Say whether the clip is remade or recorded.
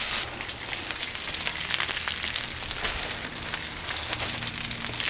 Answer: recorded